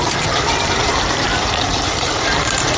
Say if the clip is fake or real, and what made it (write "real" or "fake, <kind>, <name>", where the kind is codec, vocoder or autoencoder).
fake, vocoder, BigVGAN v2